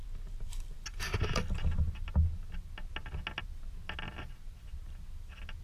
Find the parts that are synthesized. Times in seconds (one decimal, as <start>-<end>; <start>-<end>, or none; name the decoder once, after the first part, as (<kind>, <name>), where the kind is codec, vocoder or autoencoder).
none